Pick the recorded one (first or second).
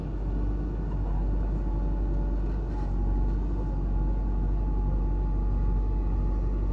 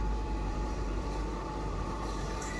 first